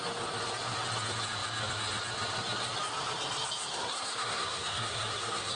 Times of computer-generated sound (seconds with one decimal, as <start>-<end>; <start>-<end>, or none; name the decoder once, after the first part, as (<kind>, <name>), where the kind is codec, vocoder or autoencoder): 3.6-5.5 (codec, SNAC)